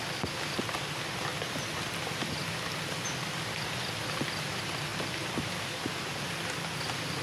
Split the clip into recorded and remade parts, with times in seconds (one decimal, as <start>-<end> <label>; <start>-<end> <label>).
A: 0.0-7.2 recorded